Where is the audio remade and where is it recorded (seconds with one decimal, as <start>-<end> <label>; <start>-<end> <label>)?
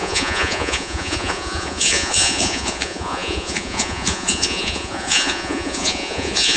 0.0-6.6 remade